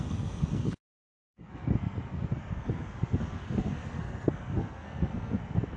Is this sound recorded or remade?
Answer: remade